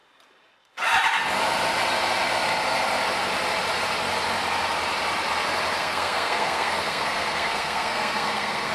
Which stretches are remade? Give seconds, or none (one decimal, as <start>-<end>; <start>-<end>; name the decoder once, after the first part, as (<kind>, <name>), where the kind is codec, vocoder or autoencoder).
5.8-8.7 (codec, SNAC)